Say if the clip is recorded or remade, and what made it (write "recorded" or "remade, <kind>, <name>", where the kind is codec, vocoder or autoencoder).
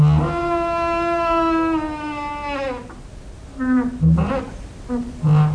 recorded